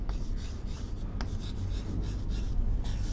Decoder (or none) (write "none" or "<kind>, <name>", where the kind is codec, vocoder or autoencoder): none